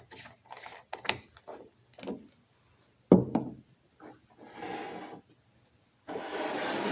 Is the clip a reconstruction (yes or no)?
no